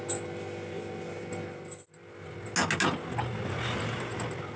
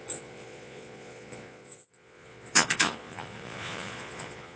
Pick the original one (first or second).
first